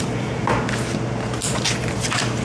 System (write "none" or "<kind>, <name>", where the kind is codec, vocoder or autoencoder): none